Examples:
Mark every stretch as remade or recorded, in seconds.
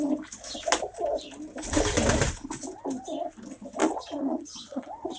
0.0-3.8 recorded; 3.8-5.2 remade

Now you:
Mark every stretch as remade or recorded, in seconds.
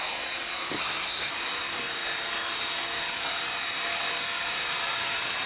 0.0-0.8 recorded; 0.8-1.3 remade; 1.3-5.5 recorded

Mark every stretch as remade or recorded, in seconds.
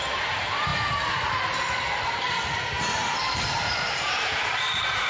0.0-0.7 remade; 0.7-3.2 recorded; 3.2-5.1 remade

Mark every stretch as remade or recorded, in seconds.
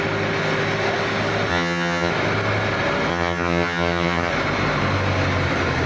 0.0-1.5 recorded; 1.5-2.1 remade; 2.1-3.1 recorded; 3.1-4.3 remade; 4.3-5.9 recorded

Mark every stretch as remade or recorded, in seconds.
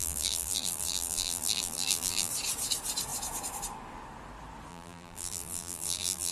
0.0-2.3 remade; 2.3-4.7 recorded; 4.7-6.3 remade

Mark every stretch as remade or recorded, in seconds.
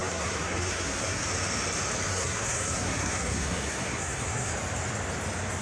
0.0-1.3 remade; 1.3-2.1 recorded; 2.1-4.5 remade; 4.5-5.6 recorded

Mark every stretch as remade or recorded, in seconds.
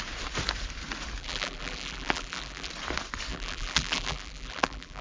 0.0-1.2 recorded; 1.2-2.7 remade; 2.7-3.3 recorded; 3.3-5.0 remade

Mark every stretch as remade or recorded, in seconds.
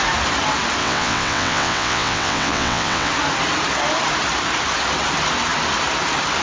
0.0-0.8 recorded; 0.8-3.1 remade; 3.1-6.4 recorded